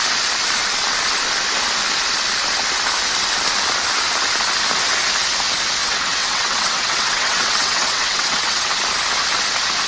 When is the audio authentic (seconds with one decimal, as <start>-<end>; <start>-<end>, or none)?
0.0-5.8; 8.7-9.9